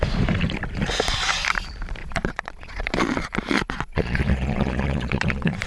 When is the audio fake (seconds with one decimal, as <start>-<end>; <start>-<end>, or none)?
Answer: 2.0-5.7